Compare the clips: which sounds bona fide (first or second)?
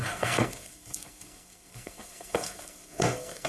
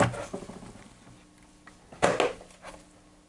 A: second